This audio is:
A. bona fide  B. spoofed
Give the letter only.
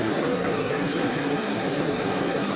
B